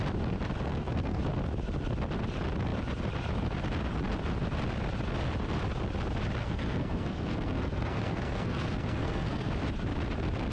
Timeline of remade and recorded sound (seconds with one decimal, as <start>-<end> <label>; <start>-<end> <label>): 0.0-0.7 recorded; 0.7-1.2 remade; 1.2-6.4 recorded; 6.4-9.5 remade; 9.5-10.5 recorded